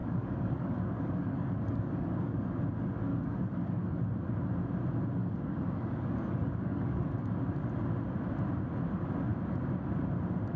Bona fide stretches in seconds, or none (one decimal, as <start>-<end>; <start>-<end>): 2.5-3.1; 4.0-5.2; 7.3-10.6